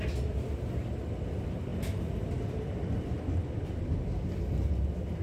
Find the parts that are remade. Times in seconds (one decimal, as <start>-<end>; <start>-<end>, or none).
1.7-4.8